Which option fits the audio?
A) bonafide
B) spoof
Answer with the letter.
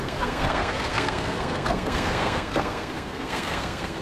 B